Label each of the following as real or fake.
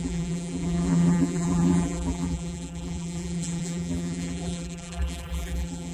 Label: fake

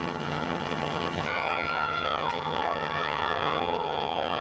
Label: fake